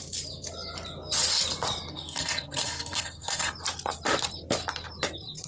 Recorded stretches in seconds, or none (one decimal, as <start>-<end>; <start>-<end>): 0.0-1.9; 3.5-5.5